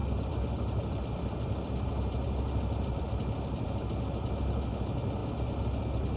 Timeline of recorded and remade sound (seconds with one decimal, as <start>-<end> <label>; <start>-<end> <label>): 0.0-3.7 remade; 3.7-6.2 recorded